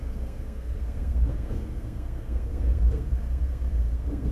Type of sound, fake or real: fake